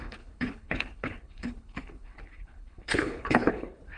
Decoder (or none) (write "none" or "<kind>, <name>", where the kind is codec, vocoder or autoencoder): codec, HILCodec